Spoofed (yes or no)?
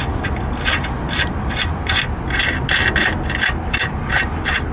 no